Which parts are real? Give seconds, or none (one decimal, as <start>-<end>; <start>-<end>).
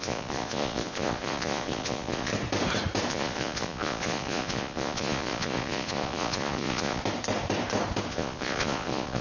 2.3-3.1; 7.0-8.1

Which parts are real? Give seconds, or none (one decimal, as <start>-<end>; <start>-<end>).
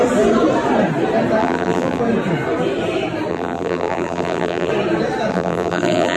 0.0-1.4; 2.0-3.3; 4.7-5.3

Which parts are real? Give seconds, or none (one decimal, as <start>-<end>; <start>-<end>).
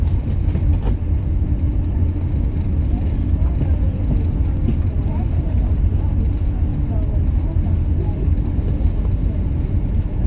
0.0-10.3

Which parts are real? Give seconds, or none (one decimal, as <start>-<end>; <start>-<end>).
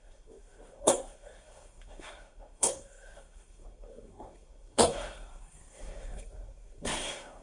none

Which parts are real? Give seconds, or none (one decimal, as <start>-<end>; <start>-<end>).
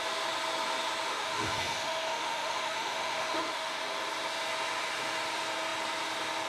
0.0-1.1; 3.8-6.5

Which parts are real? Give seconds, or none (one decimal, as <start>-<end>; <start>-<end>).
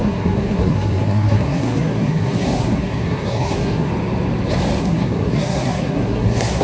3.9-4.8